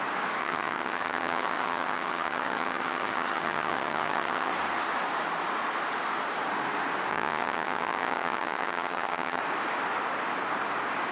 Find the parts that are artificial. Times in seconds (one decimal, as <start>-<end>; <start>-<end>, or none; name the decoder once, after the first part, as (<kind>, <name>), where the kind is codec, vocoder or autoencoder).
0.4-4.5 (vocoder, HiFi-GAN); 7.1-9.4